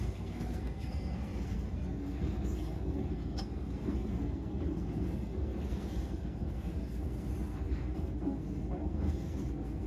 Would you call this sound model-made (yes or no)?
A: yes